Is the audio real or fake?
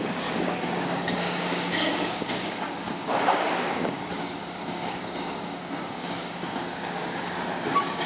fake